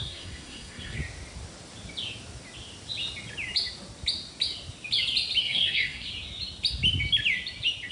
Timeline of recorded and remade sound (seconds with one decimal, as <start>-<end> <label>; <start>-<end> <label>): 0.0-1.0 remade; 1.0-5.4 recorded; 5.4-6.1 remade; 6.1-7.9 recorded